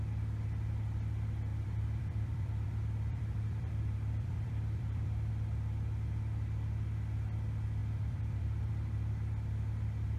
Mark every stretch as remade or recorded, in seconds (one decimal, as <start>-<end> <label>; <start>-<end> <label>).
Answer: 0.0-1.5 recorded; 1.5-5.3 remade; 5.3-7.8 recorded; 7.8-8.7 remade; 8.7-10.2 recorded